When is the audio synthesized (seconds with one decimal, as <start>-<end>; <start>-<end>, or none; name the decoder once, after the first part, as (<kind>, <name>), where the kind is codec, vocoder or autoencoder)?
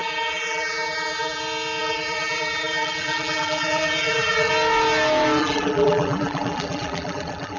0.0-1.4 (vocoder, BigVGAN v2); 1.8-4.5; 5.4-7.6